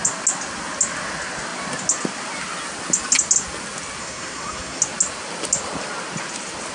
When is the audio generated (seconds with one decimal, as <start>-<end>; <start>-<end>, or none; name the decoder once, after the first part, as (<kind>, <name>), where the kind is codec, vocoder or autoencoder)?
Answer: 4.0-4.8 (codec, SNAC)